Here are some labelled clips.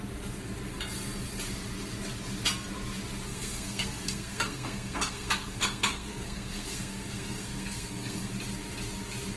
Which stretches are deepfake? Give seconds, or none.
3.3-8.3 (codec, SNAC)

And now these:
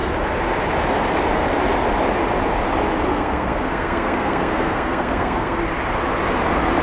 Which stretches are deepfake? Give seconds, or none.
3.1-5.6 (codec, SNAC)

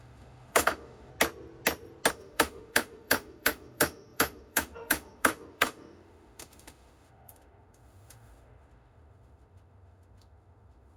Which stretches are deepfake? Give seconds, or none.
0.0-1.1 (autoencoder, DAC-VAE); 2.1-11.0